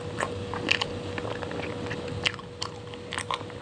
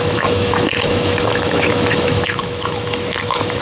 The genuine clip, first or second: first